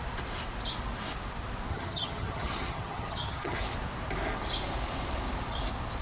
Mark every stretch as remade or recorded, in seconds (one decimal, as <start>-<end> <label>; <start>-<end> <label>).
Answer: 0.0-1.7 recorded; 1.7-3.6 remade; 3.6-6.0 recorded